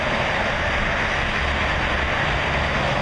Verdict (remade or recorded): recorded